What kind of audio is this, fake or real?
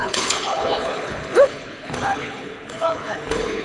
fake